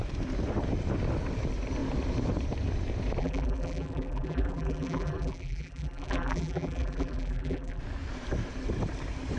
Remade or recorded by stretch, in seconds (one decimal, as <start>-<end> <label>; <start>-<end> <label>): 0.0-3.2 recorded; 3.2-7.8 remade; 7.8-9.4 recorded